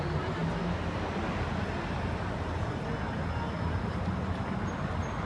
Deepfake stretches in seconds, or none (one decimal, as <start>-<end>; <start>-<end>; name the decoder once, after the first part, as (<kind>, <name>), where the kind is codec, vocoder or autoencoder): none